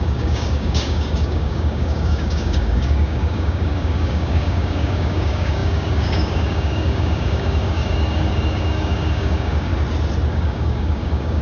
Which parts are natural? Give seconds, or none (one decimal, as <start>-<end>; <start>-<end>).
9.7-10.3